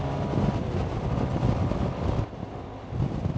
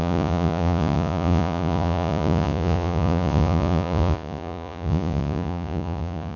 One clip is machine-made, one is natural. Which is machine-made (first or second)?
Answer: second